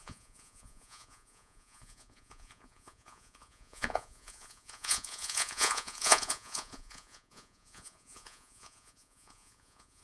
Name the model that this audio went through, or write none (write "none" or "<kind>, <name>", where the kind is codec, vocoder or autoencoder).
vocoder, Vocos